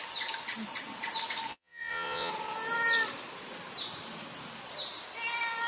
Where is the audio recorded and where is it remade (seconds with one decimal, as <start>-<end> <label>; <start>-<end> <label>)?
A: 0.0-1.5 recorded; 1.5-2.3 remade; 2.3-5.7 recorded